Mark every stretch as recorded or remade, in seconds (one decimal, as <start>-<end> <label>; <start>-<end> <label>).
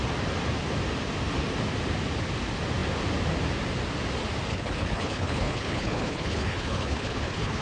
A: 0.0-4.5 recorded; 4.5-7.6 remade